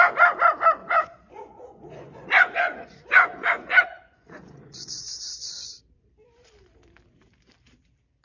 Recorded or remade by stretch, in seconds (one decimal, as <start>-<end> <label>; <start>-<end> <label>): 0.0-0.8 recorded; 0.8-5.2 remade; 5.2-8.2 recorded